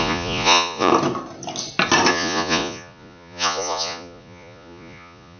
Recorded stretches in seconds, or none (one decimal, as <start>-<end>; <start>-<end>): 0.9-2.1